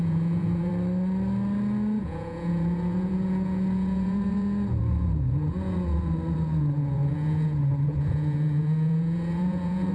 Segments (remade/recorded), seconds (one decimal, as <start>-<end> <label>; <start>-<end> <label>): 0.0-0.7 remade; 0.7-2.0 recorded; 2.0-9.9 remade